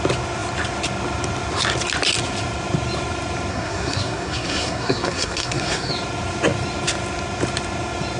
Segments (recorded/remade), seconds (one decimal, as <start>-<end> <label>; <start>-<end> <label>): 0.0-3.5 recorded; 3.5-5.9 remade; 5.9-8.2 recorded